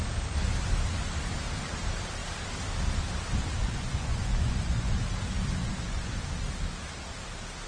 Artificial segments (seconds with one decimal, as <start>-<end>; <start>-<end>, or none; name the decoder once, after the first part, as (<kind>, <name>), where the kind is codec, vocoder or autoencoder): 3.6-5.0 (vocoder, Vocos); 5.6-6.1